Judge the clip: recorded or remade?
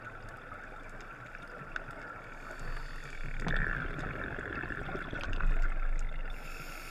recorded